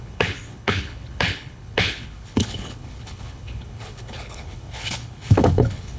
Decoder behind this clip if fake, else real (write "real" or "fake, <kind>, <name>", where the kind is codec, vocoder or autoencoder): fake, codec, HILCodec